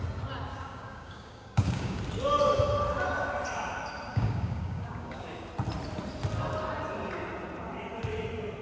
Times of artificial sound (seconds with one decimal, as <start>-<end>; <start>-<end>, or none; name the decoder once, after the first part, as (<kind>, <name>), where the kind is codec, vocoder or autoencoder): 0.5-2.0 (codec, DAC); 4.1-5.5